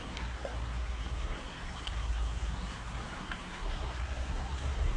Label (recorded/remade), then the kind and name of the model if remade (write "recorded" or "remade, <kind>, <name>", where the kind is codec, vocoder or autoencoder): remade, codec, SNAC